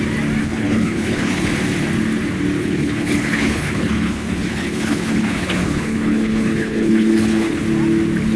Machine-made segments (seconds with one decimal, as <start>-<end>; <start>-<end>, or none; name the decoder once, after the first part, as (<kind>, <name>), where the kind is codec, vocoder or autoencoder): 0.4-1.5 (codec, HILCodec); 2.6-7.6